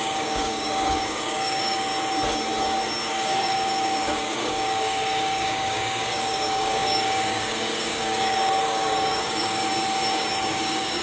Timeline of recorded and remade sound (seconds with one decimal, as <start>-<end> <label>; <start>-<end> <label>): 0.0-1.9 remade; 1.9-3.1 recorded; 3.1-9.6 remade; 9.6-10.6 recorded; 10.6-11.0 remade